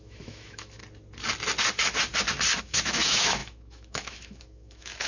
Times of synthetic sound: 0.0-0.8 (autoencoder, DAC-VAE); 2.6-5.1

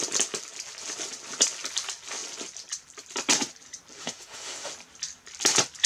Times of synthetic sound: 4.0-4.7 (autoencoder, DAC-VAE)

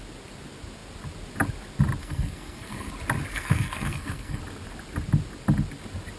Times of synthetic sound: 2.0-2.9 (codec, SNAC); 3.3-4.4

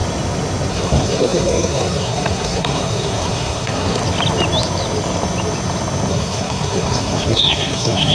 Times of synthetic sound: 0.7-4.0 (codec, SNAC); 6.1-8.1

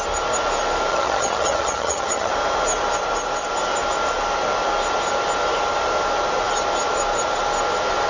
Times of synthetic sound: 0.9-2.3 (vocoder, HiFi-GAN)

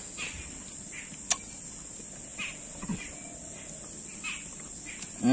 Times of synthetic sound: none

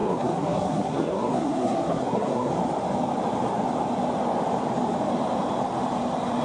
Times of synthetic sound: 0.0-2.5 (codec, SNAC)

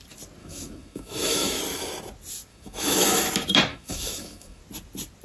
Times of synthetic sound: 0.4-1.6 (autoencoder, DAC-VAE); 2.5-3.3; 3.7-4.6